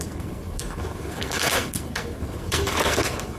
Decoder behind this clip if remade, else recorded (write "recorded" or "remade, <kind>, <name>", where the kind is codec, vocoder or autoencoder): remade, codec, SNAC